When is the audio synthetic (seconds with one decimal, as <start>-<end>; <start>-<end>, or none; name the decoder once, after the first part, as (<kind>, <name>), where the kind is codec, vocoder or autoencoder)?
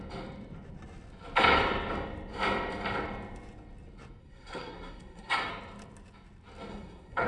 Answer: 4.2-5.5 (codec, SNAC); 6.7-7.3